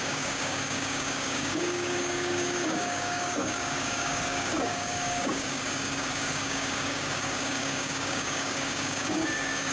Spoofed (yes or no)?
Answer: yes